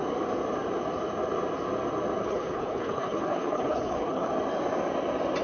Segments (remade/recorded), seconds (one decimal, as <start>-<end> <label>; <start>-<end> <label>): 0.0-2.2 recorded; 2.2-4.3 remade; 4.3-5.4 recorded